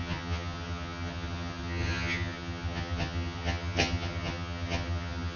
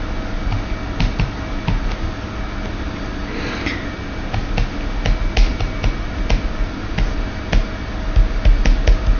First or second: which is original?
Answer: second